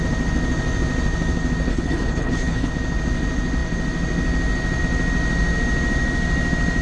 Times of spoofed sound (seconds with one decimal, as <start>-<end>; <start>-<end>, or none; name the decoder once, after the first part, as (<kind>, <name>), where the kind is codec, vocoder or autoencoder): 1.7-2.7 (codec, HILCodec)